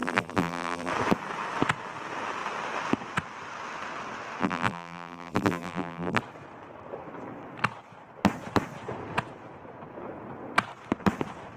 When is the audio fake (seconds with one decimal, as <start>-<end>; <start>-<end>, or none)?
0.0-0.9; 4.4-6.2